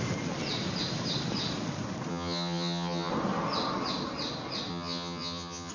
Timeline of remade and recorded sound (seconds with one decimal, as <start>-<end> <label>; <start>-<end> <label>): 0.0-2.1 recorded; 2.1-3.1 remade; 3.1-4.7 recorded; 4.7-5.7 remade